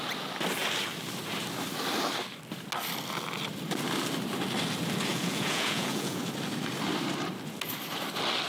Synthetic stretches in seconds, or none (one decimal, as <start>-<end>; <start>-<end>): 5.1-6.2